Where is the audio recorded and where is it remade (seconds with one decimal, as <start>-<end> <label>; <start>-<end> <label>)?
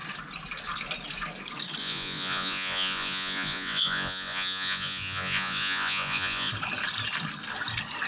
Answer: 0.0-1.8 recorded; 1.8-6.5 remade; 6.5-8.1 recorded